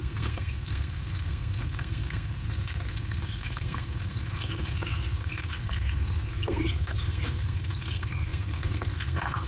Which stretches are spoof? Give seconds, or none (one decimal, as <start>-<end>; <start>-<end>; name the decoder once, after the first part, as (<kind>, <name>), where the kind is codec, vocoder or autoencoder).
0.0-9.5 (codec, SNAC)